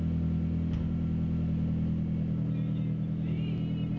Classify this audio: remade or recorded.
recorded